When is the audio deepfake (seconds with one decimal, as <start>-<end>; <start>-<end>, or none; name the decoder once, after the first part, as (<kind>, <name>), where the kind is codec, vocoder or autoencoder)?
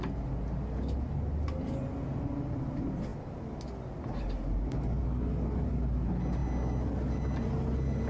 none